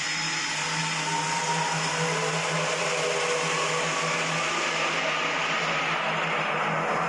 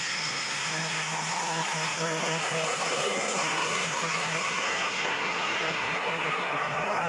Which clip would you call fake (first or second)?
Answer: second